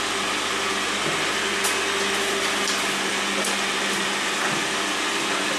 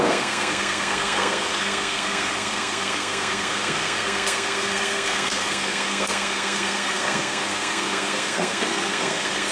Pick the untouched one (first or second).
first